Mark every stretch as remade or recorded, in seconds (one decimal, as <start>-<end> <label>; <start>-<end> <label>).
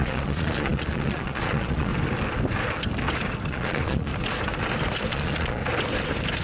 0.0-1.9 remade; 1.9-3.5 recorded; 3.5-4.1 remade; 4.1-5.1 recorded; 5.1-5.6 remade; 5.6-6.4 recorded